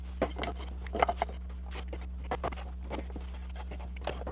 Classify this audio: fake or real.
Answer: real